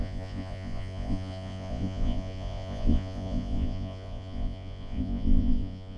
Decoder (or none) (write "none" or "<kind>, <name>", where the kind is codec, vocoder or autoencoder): vocoder, Vocos